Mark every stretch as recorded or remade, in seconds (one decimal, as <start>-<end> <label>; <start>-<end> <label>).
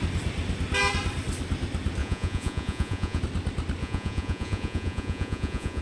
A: 0.0-2.0 recorded; 2.0-3.2 remade; 3.2-3.8 recorded; 3.8-5.8 remade